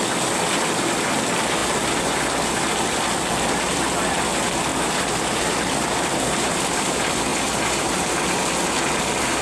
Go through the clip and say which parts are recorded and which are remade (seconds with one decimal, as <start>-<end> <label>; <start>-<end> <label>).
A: 0.0-4.7 recorded; 4.7-5.6 remade; 5.6-7.3 recorded; 7.3-8.1 remade; 8.1-9.4 recorded